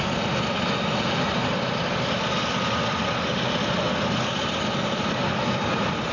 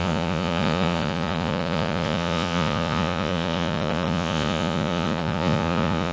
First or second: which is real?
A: first